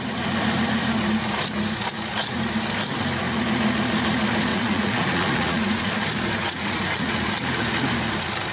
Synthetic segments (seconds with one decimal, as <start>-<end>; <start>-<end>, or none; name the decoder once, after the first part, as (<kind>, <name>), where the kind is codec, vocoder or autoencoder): 4.5-5.9 (vocoder, Vocos); 6.4-7.3